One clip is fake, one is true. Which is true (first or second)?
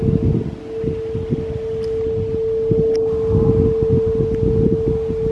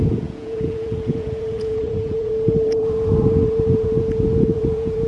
first